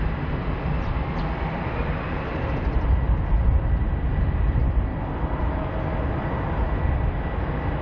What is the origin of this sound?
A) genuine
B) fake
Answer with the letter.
A